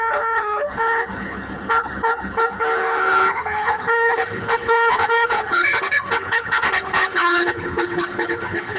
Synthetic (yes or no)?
yes